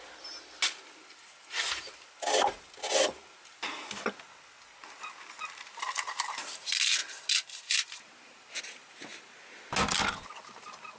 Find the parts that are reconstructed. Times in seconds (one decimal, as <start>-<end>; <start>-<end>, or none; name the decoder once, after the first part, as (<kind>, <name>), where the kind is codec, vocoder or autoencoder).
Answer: none